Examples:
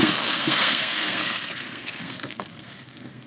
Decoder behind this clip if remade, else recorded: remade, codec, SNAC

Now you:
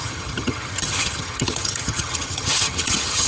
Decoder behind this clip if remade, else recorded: remade, vocoder, HiFi-GAN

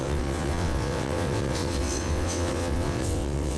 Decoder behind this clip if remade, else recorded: remade, vocoder, WaveNeXt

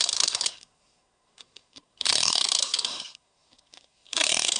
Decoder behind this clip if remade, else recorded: remade, codec, SNAC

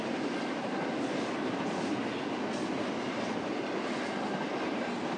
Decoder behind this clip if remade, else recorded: recorded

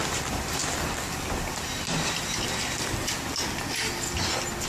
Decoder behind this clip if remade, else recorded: recorded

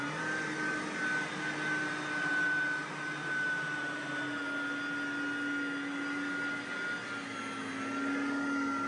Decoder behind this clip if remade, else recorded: recorded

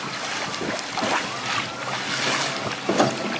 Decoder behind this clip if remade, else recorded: recorded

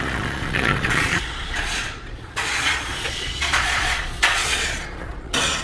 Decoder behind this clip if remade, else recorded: remade, vocoder, Vocos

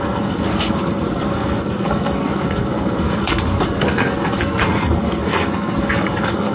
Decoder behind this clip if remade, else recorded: remade, codec, SNAC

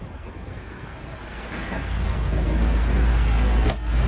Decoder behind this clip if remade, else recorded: remade, codec, SNAC